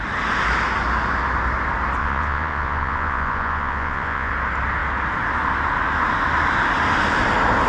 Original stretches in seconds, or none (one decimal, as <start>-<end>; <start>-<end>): 0.0-2.0; 4.3-7.7